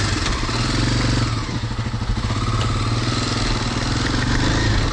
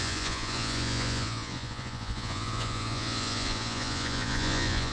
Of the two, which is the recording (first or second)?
first